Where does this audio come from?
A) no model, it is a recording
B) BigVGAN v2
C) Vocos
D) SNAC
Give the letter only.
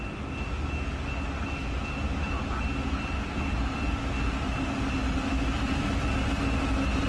A